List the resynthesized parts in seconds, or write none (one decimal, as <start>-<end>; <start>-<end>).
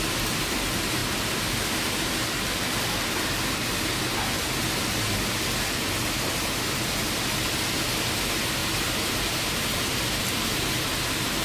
8.6-10.2